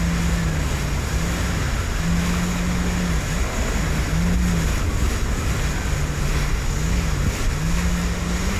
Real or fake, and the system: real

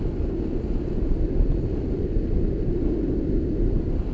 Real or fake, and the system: real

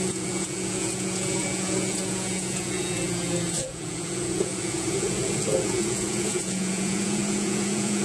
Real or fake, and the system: fake, vocoder, Vocos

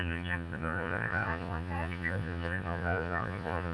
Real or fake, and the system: fake, vocoder, Vocos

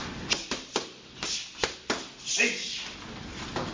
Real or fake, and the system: real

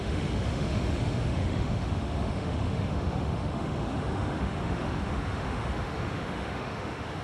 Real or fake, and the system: fake, autoencoder, DAC-VAE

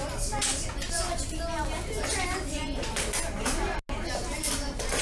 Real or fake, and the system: real